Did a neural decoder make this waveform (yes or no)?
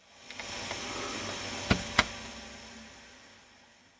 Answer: no